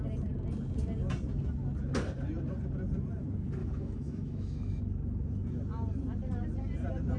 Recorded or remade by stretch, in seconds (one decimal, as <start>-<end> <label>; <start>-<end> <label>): 0.0-3.6 recorded; 3.6-4.8 remade; 4.8-7.2 recorded